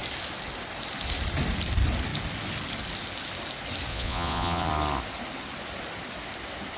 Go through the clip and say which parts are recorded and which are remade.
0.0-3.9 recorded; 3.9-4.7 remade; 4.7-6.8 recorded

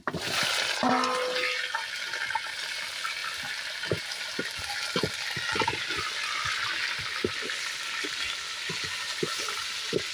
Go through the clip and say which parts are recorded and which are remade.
0.0-10.1 recorded

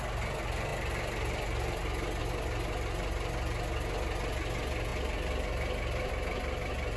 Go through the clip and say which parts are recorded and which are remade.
0.0-7.0 recorded